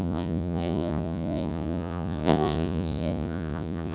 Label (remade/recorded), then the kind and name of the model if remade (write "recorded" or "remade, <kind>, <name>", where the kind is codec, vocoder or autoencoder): remade, vocoder, Vocos